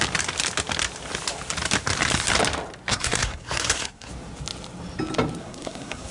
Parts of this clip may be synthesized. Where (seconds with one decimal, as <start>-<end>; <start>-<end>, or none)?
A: 2.9-4.1; 5.4-6.1